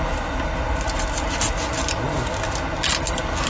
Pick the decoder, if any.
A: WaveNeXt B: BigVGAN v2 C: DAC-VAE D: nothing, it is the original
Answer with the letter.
D